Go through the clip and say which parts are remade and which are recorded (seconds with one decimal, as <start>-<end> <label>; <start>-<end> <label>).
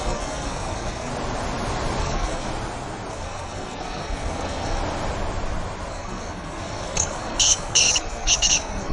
0.0-1.1 remade; 1.1-2.0 recorded; 2.0-2.5 remade; 2.5-3.1 recorded; 3.1-4.8 remade; 4.8-5.9 recorded; 5.9-8.9 remade